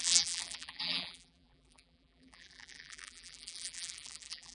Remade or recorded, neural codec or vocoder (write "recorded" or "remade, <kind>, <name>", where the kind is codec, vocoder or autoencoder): remade, vocoder, BigVGAN v2